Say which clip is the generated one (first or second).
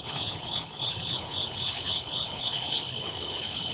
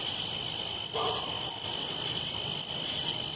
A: first